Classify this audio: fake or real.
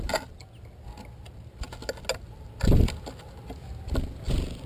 real